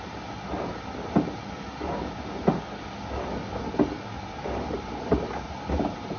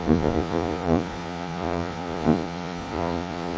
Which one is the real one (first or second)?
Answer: first